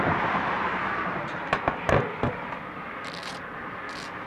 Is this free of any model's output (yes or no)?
yes